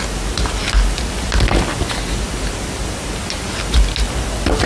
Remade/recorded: recorded